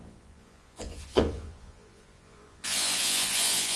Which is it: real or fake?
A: fake